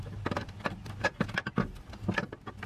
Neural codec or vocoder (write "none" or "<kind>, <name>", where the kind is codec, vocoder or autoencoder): none